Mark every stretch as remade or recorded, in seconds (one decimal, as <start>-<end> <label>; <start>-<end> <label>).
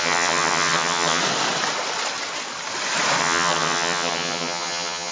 0.0-1.2 remade; 1.2-3.2 recorded; 3.2-5.1 remade